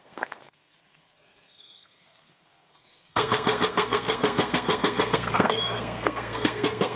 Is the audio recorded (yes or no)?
no